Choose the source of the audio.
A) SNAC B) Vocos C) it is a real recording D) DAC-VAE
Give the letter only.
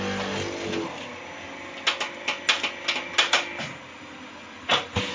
C